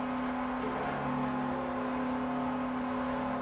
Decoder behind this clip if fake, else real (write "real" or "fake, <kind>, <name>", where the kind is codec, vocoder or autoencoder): real